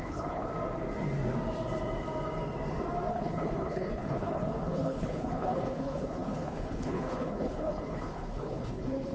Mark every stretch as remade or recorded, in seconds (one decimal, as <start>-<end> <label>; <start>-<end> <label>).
0.0-0.5 remade; 0.5-3.1 recorded; 3.1-9.1 remade